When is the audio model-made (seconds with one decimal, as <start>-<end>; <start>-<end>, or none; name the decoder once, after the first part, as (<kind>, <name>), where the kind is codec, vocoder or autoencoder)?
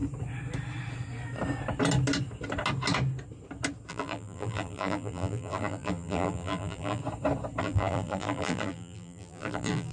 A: 3.9-7.0 (vocoder, BigVGAN v2); 7.6-9.9